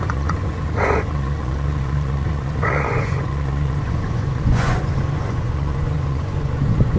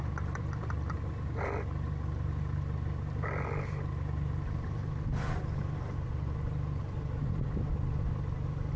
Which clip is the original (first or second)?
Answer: second